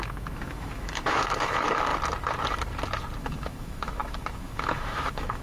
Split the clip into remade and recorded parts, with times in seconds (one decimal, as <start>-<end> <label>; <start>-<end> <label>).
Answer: 0.0-1.9 remade; 1.9-3.2 recorded; 3.2-5.4 remade